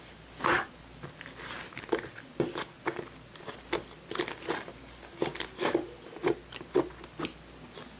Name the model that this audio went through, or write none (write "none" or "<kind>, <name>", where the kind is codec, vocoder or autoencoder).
none